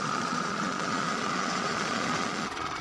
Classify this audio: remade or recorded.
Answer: remade